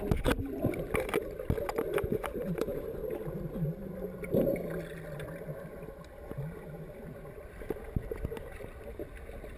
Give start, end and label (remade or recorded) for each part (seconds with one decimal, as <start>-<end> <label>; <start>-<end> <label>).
0.0-2.1 recorded; 2.1-2.8 remade; 2.8-9.6 recorded

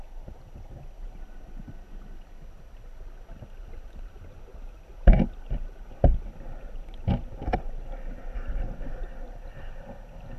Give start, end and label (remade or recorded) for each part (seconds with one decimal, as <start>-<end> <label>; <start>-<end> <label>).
0.0-10.4 recorded

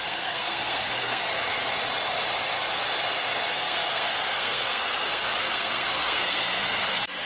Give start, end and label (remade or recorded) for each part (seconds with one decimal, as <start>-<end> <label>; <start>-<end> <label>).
0.0-1.2 remade; 1.2-3.5 recorded; 3.5-7.3 remade

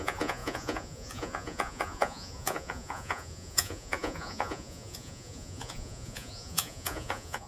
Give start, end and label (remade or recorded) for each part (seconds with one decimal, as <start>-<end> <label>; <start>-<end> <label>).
0.0-7.5 remade

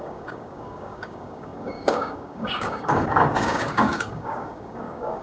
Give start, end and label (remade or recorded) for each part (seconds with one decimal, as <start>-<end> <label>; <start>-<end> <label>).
0.0-5.2 remade